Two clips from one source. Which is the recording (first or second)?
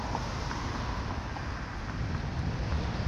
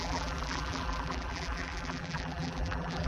first